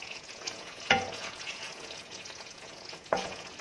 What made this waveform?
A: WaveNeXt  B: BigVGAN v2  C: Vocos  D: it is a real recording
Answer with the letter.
C